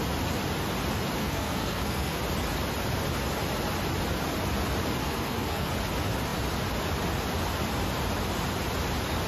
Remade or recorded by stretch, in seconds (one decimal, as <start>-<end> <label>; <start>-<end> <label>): 0.0-1.2 recorded; 1.2-2.2 remade; 2.2-5.0 recorded; 5.0-5.7 remade; 5.7-9.3 recorded